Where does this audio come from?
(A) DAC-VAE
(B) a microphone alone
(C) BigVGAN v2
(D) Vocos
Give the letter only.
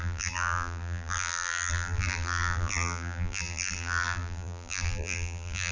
C